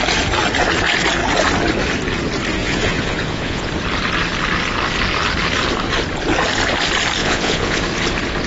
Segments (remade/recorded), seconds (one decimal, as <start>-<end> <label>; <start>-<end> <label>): 0.0-2.6 recorded; 2.6-3.7 remade; 3.7-7.2 recorded; 7.2-7.8 remade; 7.8-8.5 recorded

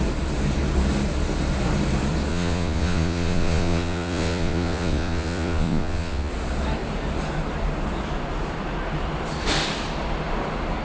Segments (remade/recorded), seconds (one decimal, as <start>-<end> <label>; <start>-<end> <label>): 0.0-2.3 recorded; 2.3-6.3 remade; 6.3-10.8 recorded